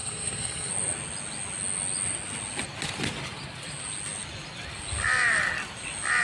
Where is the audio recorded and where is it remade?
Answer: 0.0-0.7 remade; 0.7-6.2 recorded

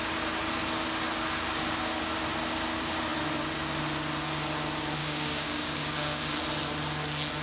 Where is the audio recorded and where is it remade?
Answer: 0.0-5.0 recorded; 5.0-6.2 remade; 6.2-7.4 recorded

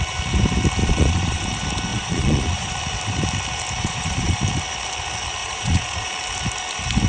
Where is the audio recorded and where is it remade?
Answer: 0.0-0.8 recorded; 0.8-1.4 remade; 1.4-1.9 recorded; 1.9-2.7 remade; 2.7-3.8 recorded; 3.8-4.4 remade; 4.4-5.4 recorded; 5.4-6.1 remade; 6.1-7.1 recorded

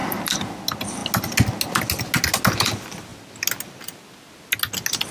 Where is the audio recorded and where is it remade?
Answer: 0.0-0.6 remade; 0.6-5.1 recorded

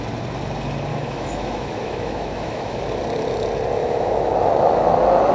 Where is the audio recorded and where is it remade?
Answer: 0.0-0.9 recorded; 0.9-2.8 remade; 2.8-3.8 recorded; 3.8-4.3 remade; 4.3-5.3 recorded